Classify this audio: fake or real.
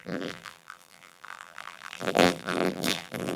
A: fake